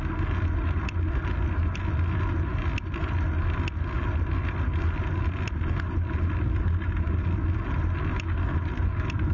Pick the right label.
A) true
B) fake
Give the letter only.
A